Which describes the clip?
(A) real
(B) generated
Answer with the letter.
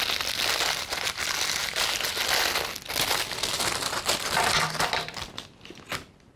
A